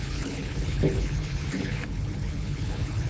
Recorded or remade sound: remade